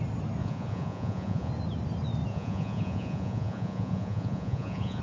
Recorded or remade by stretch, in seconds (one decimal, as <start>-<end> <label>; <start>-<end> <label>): 0.0-0.4 recorded; 0.4-1.5 remade; 1.5-2.3 recorded; 2.3-5.0 remade